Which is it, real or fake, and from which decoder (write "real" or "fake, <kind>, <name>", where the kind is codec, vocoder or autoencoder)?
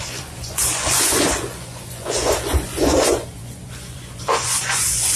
fake, vocoder, Vocos